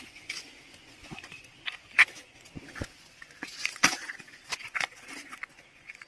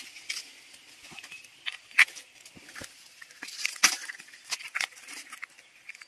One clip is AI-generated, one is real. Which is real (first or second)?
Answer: second